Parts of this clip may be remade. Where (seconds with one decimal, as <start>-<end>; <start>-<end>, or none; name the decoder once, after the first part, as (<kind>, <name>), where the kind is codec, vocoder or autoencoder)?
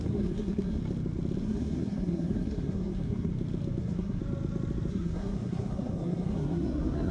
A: 0.0-0.8 (codec, SNAC); 1.4-3.3; 3.8-4.2; 4.9-7.1